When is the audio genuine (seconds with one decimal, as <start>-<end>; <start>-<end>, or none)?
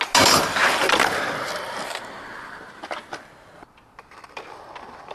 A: 0.0-0.6; 2.6-5.1